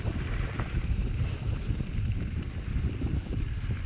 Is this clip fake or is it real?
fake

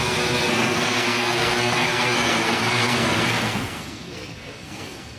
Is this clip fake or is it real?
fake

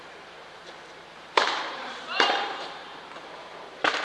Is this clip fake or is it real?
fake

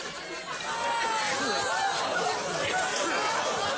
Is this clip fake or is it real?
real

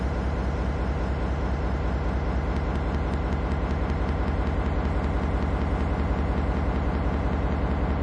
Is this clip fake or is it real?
real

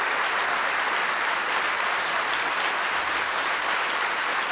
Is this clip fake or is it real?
real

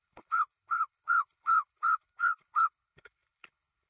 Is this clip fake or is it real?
fake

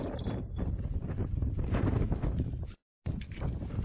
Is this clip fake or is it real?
fake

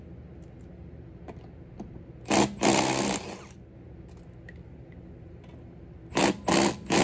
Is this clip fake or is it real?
real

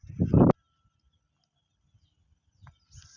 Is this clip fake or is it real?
real